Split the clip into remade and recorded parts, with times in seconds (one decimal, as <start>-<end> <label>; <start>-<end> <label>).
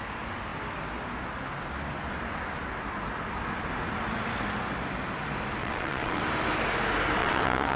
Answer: 0.0-5.6 recorded; 5.6-6.2 remade; 6.2-7.2 recorded; 7.2-7.8 remade